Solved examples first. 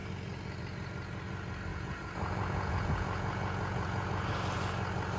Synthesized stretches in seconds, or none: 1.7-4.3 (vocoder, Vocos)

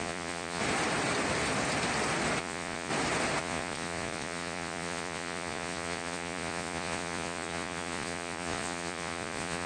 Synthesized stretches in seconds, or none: 0.0-0.6 (vocoder, Vocos); 2.4-2.9; 3.4-9.7